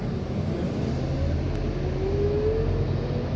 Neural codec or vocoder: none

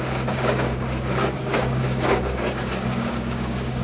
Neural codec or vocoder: codec, DAC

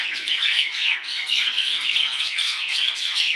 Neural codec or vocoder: codec, SNAC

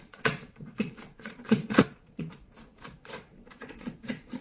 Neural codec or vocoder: vocoder, Vocos